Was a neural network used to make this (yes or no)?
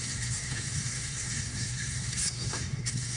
yes